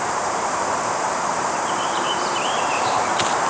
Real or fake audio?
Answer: fake